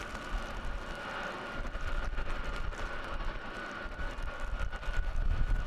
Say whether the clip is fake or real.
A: real